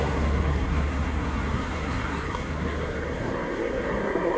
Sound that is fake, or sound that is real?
fake